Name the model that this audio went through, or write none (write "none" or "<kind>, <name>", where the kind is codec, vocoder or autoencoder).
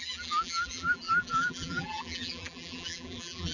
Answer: vocoder, BigVGAN v2